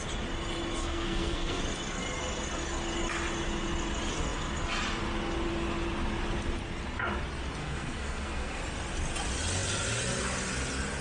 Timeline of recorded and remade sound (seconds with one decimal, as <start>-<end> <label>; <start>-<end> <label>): 0.0-0.8 recorded; 0.8-1.6 remade; 1.6-7.6 recorded; 7.6-8.6 remade; 8.6-11.0 recorded